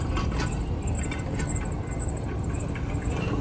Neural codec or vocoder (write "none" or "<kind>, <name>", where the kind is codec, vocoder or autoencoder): none